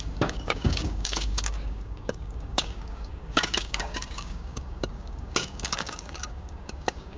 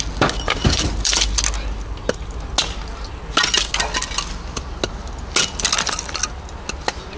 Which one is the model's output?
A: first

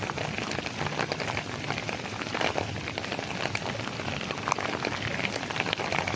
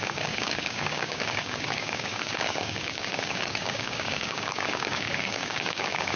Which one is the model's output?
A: second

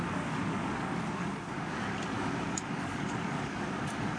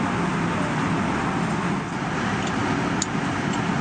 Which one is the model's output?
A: first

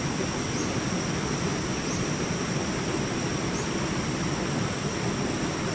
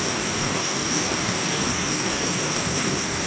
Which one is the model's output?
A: second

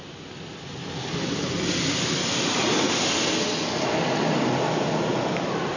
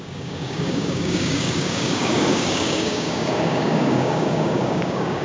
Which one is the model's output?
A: second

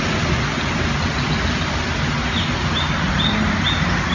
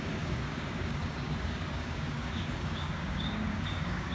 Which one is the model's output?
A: second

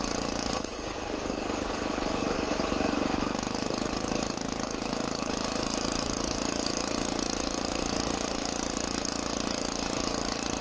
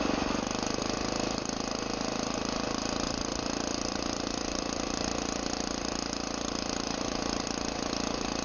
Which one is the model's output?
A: first